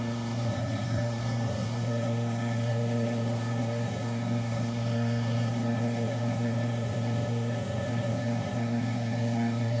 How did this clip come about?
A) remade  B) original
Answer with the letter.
A